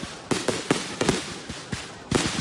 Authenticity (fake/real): real